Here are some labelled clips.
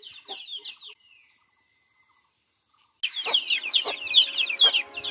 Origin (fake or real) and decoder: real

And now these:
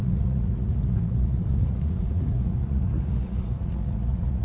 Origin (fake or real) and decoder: fake, vocoder, Vocos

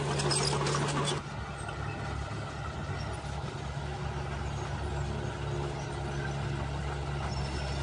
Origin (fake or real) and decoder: real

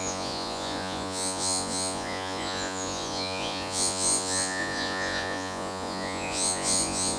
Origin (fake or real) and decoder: fake, vocoder, Vocos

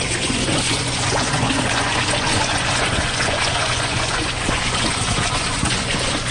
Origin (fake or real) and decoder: fake, vocoder, Vocos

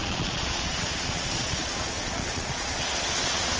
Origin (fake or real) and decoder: fake, vocoder, Vocos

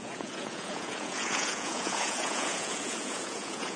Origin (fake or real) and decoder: fake, vocoder, Vocos